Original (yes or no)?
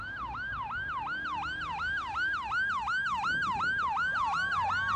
yes